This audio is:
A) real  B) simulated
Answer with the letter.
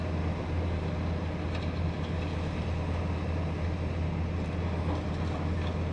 A